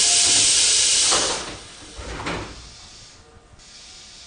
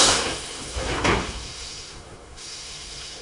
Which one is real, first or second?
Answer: first